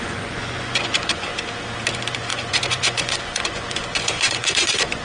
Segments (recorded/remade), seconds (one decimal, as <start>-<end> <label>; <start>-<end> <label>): 0.0-1.3 remade; 1.3-1.9 recorded; 1.9-5.0 remade